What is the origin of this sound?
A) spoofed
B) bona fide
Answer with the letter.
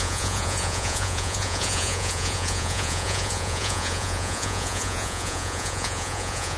A